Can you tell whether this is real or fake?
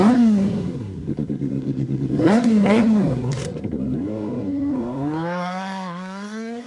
fake